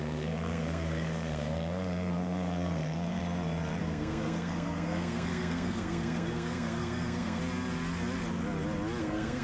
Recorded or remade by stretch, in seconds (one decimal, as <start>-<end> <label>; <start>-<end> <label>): 0.0-3.2 remade; 3.2-3.8 recorded; 3.8-7.4 remade; 7.4-9.0 recorded; 9.0-9.4 remade